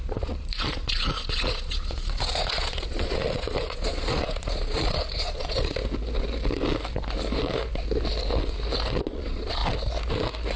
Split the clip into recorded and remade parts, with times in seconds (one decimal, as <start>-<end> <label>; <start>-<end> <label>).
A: 0.0-5.8 remade; 5.8-9.0 recorded; 9.0-9.6 remade; 9.6-10.6 recorded